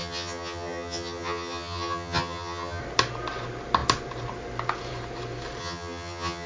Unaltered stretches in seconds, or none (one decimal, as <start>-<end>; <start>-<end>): 2.8-5.6